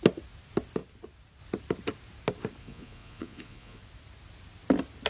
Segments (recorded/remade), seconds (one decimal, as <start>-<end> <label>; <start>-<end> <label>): 0.0-2.6 recorded; 2.6-3.8 remade; 3.8-5.1 recorded